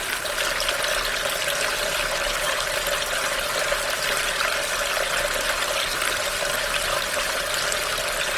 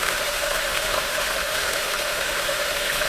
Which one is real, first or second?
first